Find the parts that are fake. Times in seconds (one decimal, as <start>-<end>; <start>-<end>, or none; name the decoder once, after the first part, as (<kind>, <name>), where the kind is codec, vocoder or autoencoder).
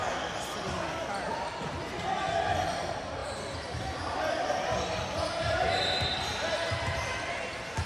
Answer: none